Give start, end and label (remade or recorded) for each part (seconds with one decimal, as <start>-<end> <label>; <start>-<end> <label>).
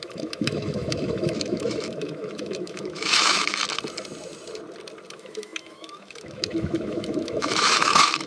0.0-3.6 remade; 3.6-5.1 recorded; 5.1-8.3 remade